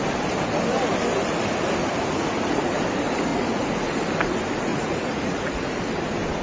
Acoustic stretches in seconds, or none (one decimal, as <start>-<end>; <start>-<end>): 0.0-1.8; 2.8-3.3; 4.0-4.7; 5.8-6.4